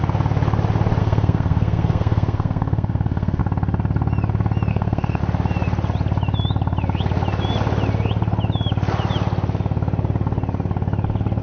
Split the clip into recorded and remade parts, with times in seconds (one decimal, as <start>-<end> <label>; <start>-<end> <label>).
0.0-1.0 recorded; 1.0-3.4 remade; 3.4-4.7 recorded; 4.7-5.2 remade; 5.2-11.4 recorded